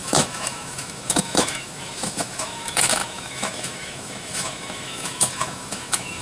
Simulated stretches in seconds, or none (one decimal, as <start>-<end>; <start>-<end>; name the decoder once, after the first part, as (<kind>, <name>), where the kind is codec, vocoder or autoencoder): 0.0-6.2 (autoencoder, DAC-VAE)